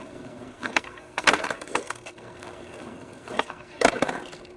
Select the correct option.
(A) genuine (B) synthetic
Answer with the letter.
B